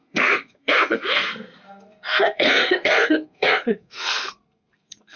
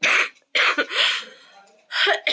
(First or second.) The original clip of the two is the second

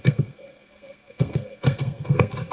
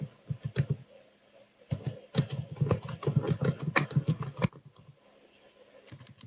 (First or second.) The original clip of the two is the second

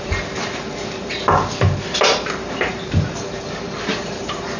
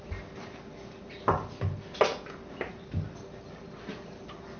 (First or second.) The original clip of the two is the second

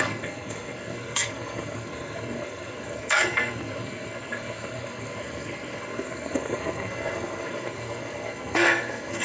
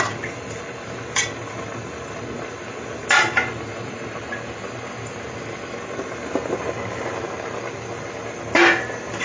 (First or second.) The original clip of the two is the second